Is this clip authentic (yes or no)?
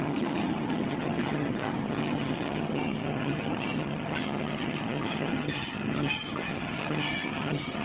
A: no